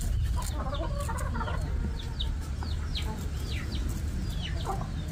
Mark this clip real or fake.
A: real